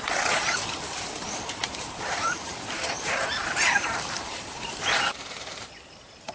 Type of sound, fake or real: fake